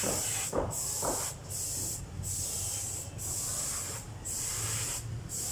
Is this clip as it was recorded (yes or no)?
yes